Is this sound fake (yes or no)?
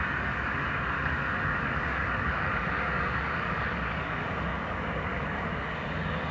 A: yes